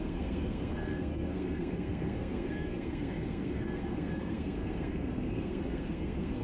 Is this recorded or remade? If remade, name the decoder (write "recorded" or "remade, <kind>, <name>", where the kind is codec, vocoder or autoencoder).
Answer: remade, codec, SNAC